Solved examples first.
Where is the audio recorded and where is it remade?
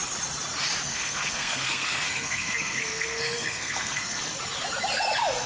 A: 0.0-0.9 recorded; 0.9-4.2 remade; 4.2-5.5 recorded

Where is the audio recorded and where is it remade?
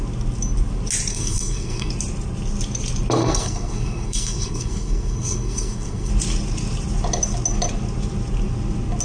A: 0.0-1.1 recorded; 1.1-1.9 remade; 1.9-3.2 recorded; 3.2-6.1 remade; 6.1-9.0 recorded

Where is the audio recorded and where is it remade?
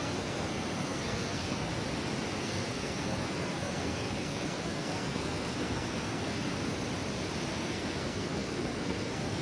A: 0.0-1.7 remade; 1.7-2.4 recorded; 2.4-6.5 remade; 6.5-7.5 recorded; 7.5-9.4 remade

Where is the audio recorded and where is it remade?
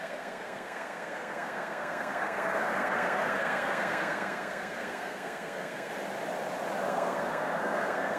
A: 0.0-5.9 remade; 5.9-6.9 recorded; 6.9-8.2 remade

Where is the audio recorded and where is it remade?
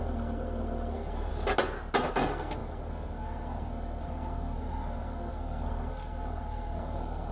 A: 0.0-1.3 remade; 1.3-2.1 recorded; 2.1-7.3 remade